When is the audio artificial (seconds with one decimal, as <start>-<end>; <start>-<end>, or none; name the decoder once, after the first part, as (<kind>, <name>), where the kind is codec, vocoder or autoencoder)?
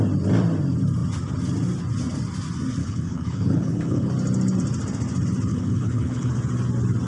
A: 2.8-4.1 (codec, HILCodec); 5.5-6.3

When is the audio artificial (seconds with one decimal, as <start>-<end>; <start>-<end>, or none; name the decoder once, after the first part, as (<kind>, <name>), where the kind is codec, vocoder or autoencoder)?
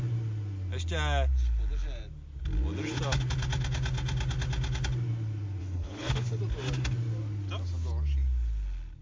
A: 5.6-6.4 (codec, HILCodec)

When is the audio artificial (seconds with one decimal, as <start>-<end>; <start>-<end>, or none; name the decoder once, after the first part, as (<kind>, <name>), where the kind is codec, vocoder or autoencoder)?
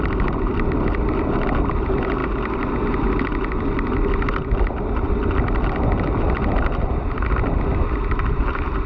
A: none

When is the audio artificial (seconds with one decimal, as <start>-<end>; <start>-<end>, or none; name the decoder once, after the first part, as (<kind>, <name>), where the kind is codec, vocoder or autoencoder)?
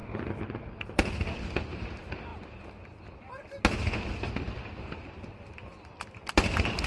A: none